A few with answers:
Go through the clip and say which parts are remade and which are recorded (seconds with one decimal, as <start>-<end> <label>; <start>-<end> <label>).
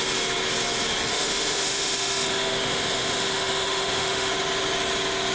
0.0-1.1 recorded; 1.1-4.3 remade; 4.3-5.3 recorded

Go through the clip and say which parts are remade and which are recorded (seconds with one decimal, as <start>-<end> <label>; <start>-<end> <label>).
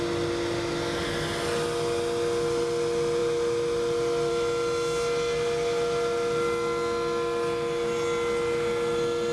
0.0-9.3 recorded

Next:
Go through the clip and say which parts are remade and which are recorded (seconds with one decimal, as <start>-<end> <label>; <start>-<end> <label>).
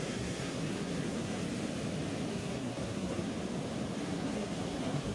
0.0-1.4 remade; 1.4-2.3 recorded; 2.3-3.3 remade; 3.3-4.0 recorded; 4.0-5.1 remade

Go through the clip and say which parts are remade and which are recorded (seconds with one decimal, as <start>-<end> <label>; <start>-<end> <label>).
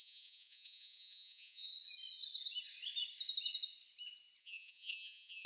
0.0-1.7 remade; 1.7-4.4 recorded; 4.4-5.5 remade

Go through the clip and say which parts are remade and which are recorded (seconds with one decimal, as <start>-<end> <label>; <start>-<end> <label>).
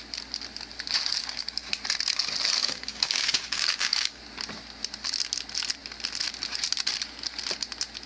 0.0-1.2 recorded; 1.2-1.7 remade; 1.7-2.6 recorded; 2.6-4.2 remade; 4.2-8.1 recorded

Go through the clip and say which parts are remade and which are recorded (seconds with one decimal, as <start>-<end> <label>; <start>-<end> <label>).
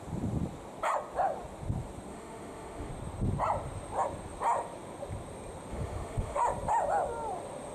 0.0-2.1 recorded; 2.1-2.9 remade; 2.9-5.7 recorded; 5.7-6.4 remade; 6.4-7.7 recorded